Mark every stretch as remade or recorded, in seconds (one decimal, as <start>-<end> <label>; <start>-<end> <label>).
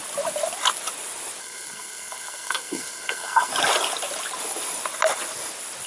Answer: 0.0-1.4 recorded; 1.4-3.5 remade; 3.5-5.9 recorded